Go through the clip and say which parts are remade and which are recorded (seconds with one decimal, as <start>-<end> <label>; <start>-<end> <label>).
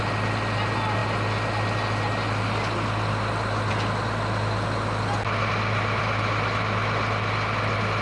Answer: 0.0-8.0 recorded